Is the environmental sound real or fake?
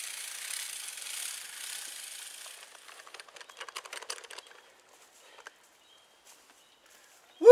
real